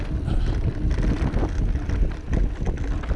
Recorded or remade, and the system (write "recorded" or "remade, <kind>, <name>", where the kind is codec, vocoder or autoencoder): recorded